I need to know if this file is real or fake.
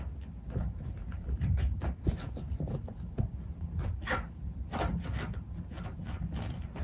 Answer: real